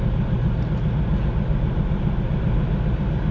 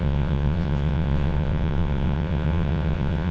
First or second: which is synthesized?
second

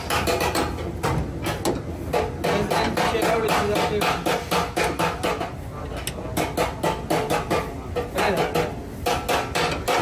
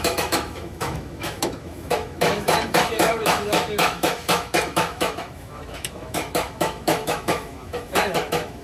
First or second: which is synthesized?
second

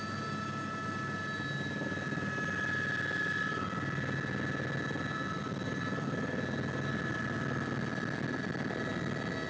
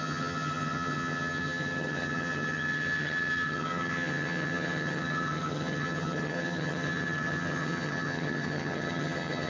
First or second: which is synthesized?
second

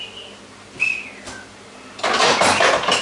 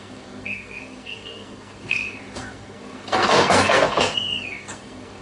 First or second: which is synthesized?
second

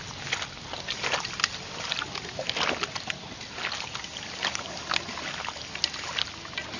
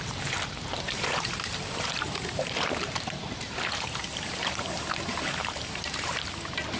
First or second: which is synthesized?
second